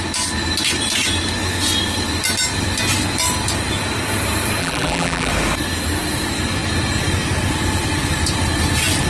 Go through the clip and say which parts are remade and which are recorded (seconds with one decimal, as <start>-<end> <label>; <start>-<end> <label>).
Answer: 0.0-4.6 recorded; 4.6-5.3 remade; 5.3-9.1 recorded